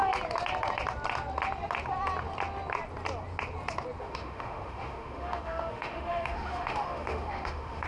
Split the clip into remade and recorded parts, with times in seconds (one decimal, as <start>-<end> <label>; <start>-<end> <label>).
0.0-4.0 recorded; 4.0-7.9 remade